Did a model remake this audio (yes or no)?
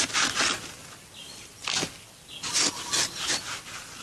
no